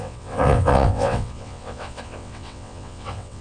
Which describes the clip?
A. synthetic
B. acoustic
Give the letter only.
A